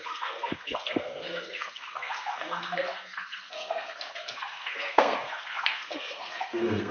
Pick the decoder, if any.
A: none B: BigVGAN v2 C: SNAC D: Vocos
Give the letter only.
C